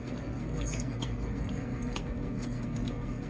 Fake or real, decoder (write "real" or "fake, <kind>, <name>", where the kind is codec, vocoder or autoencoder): fake, codec, SNAC